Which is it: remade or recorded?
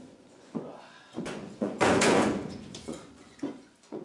remade